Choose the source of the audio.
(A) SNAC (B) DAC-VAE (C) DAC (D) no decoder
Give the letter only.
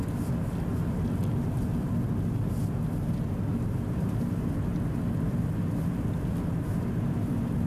D